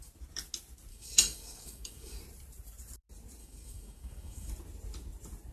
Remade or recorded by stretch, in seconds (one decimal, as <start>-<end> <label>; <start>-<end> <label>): 0.0-0.9 recorded; 0.9-2.2 remade; 2.2-3.4 recorded; 3.4-4.5 remade; 4.5-5.5 recorded